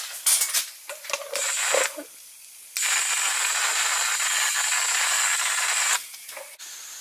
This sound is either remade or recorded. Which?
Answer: recorded